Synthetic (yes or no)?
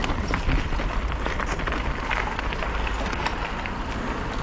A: no